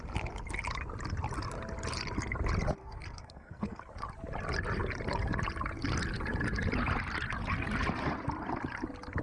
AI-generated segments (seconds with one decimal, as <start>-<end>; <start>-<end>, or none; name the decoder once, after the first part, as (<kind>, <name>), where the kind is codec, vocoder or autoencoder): 2.8-3.8 (codec, SNAC)